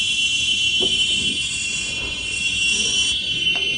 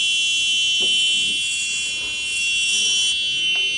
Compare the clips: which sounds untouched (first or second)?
second